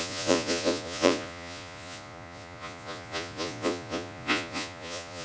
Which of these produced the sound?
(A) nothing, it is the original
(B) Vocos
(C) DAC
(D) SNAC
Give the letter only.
B